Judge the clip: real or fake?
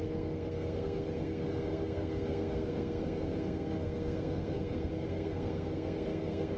fake